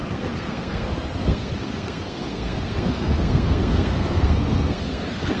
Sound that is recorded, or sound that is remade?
remade